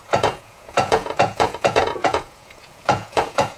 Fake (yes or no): yes